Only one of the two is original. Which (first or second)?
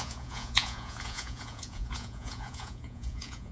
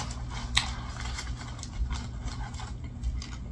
second